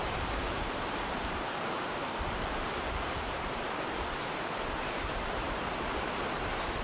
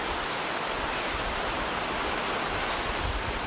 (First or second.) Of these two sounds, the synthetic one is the first